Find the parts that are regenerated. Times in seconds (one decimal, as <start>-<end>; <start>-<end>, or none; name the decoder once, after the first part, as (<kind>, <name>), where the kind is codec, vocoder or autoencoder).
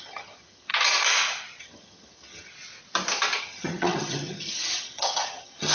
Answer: 0.0-0.7 (vocoder, HiFi-GAN); 1.6-2.5; 3.4-5.7